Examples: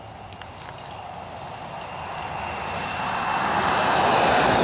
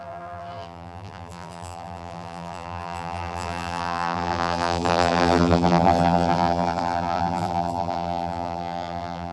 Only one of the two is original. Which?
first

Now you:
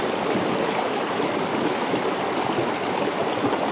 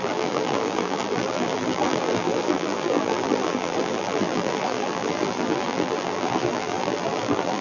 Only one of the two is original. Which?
first